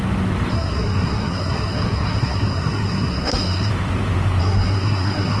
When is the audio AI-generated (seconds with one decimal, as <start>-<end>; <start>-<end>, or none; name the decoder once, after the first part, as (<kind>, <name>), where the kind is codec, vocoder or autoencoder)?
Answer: 0.5-3.7 (codec, SNAC); 4.4-5.4